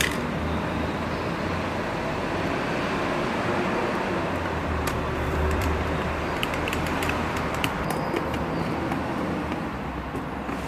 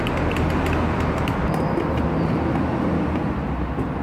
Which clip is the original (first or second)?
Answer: second